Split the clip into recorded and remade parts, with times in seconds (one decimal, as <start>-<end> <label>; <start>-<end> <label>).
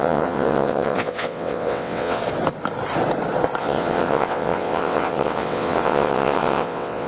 0.0-2.2 remade; 2.2-3.6 recorded; 3.6-7.1 remade